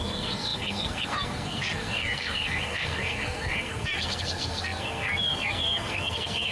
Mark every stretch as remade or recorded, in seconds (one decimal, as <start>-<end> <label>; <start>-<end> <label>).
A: 0.0-6.5 remade